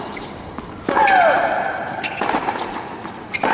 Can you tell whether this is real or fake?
real